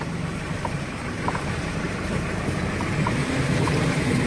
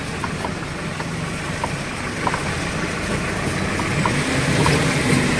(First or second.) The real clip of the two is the second